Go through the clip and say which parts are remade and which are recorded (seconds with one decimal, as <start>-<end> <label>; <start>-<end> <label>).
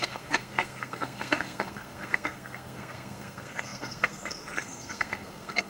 0.0-5.7 remade